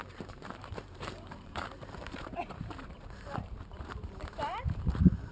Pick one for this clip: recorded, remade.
remade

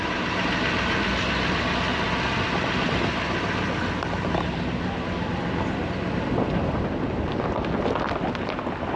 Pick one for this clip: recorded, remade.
remade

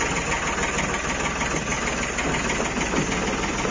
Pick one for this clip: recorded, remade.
recorded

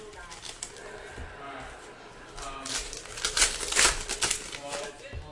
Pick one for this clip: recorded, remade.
recorded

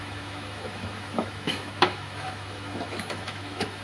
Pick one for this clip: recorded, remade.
remade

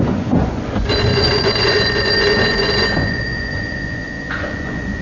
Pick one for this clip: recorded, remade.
remade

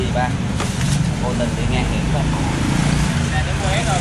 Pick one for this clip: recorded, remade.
recorded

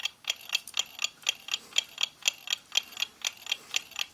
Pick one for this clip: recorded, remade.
recorded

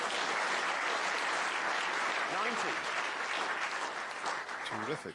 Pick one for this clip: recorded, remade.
recorded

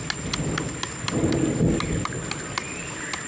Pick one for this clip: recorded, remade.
recorded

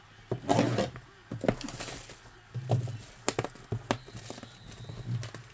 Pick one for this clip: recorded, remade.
recorded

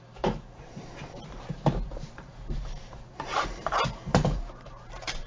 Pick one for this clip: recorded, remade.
remade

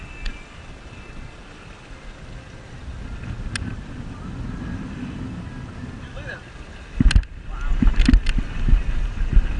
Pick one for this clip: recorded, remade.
recorded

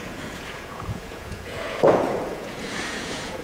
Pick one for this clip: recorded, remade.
remade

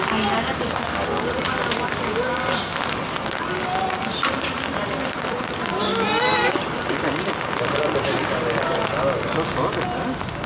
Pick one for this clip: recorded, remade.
recorded